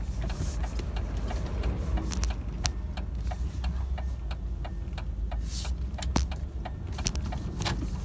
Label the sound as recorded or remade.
recorded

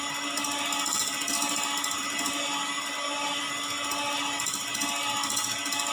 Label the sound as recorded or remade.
recorded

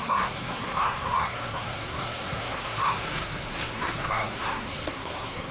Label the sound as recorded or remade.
remade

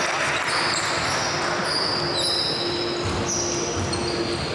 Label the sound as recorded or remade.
recorded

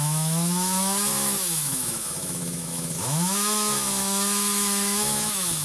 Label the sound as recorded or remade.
remade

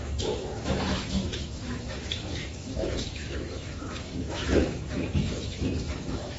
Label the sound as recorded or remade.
remade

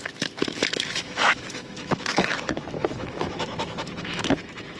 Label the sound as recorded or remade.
remade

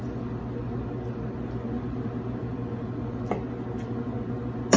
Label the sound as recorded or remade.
recorded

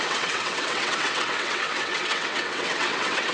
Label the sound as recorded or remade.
remade